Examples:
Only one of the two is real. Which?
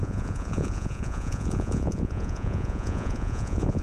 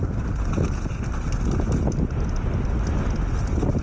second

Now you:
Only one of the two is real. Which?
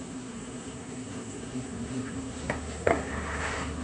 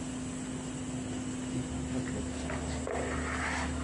second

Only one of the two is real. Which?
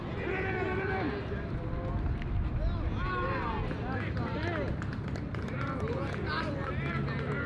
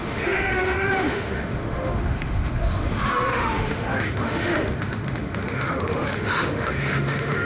first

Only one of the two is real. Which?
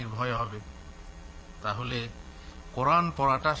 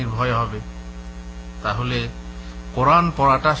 second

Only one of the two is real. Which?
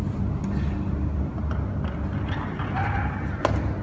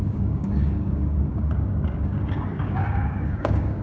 first